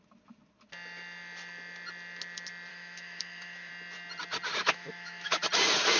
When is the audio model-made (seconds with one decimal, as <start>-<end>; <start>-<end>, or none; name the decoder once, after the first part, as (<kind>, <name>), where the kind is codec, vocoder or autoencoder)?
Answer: 2.7-3.7 (autoencoder, DAC-VAE); 4.6-5.4